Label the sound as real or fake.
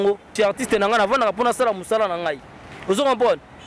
real